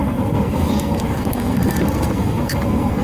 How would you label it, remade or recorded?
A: remade